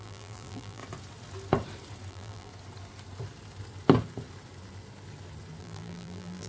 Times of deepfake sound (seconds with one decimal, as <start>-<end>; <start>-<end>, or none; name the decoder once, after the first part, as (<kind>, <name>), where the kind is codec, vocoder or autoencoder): 0.0-0.8 (vocoder, BigVGAN v2); 2.1-2.5; 5.6-6.5